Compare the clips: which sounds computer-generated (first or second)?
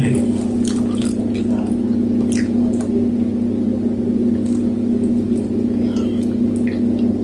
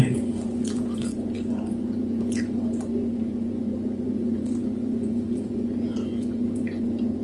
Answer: second